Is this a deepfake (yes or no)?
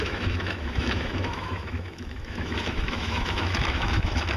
yes